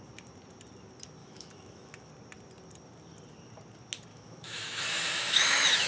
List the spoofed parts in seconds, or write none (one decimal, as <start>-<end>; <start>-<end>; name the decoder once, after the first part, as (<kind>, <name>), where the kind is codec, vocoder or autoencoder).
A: 1.2-2.1 (autoencoder, DAC-VAE); 4.1-5.9